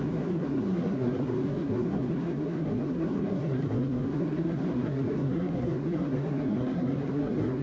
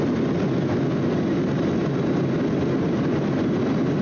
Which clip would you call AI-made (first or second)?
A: first